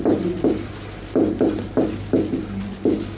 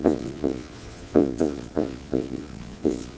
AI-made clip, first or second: second